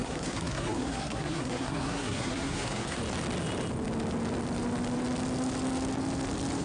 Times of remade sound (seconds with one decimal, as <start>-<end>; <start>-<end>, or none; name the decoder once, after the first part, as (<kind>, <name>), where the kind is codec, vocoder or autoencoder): 0.0-3.0 (codec, SNAC)